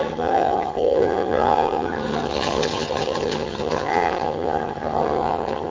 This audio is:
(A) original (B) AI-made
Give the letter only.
B